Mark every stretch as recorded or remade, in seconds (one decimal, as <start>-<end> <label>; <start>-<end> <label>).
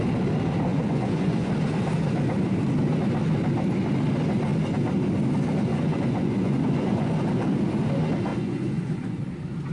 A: 0.0-0.7 recorded; 0.7-1.5 remade; 1.5-5.7 recorded; 5.7-7.1 remade; 7.1-8.3 recorded; 8.3-9.2 remade; 9.2-9.7 recorded